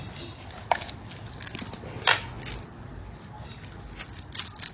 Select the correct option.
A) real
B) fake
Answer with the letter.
A